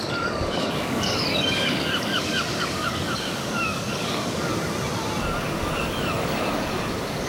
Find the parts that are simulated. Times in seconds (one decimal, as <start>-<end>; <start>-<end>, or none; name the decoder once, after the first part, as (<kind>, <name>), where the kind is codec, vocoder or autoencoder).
0.0-4.5 (codec, DAC); 5.2-7.3